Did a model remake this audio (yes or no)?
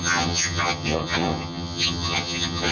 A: yes